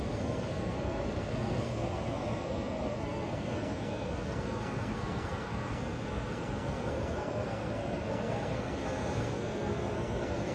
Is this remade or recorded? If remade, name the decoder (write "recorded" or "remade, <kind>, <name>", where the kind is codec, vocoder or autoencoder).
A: remade, codec, SNAC